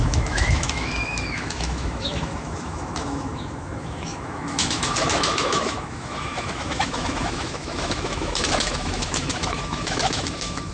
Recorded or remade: remade